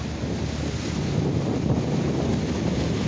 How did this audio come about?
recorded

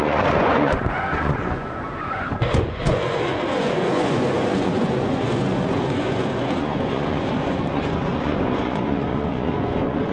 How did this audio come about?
remade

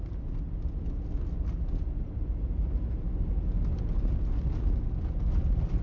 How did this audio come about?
recorded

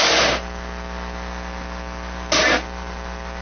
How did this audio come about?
recorded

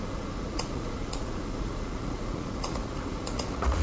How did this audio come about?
remade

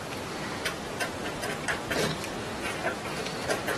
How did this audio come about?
recorded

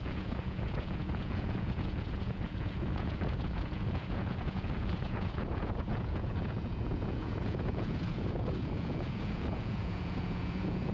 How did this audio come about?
remade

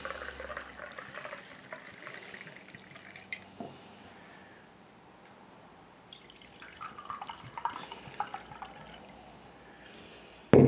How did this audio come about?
recorded